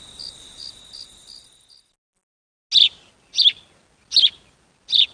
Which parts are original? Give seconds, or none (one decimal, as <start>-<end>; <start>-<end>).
0.0-5.1

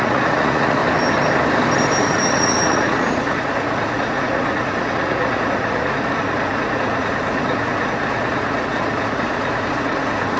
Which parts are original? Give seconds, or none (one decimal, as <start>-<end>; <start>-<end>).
0.8-2.0